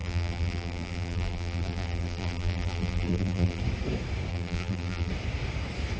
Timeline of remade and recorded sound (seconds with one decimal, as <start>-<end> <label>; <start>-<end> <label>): 0.0-3.6 remade; 3.6-4.3 recorded; 4.3-5.1 remade; 5.1-6.0 recorded